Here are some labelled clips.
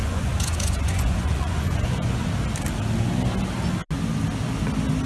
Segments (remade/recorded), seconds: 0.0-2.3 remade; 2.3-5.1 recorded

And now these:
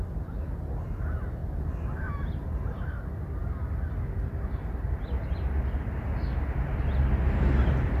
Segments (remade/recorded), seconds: 0.0-8.0 recorded

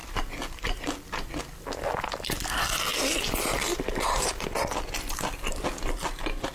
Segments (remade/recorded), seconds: 0.0-1.3 remade; 1.3-6.5 recorded

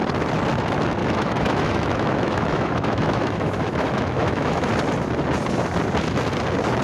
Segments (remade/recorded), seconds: 0.0-1.0 recorded; 1.0-4.7 remade; 4.7-6.8 recorded

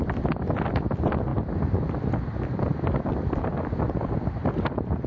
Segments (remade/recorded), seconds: 0.0-5.1 remade